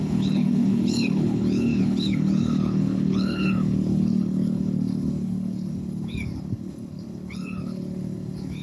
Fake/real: fake